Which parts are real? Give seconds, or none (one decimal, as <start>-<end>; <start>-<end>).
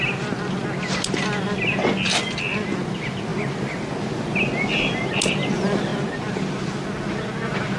0.0-7.8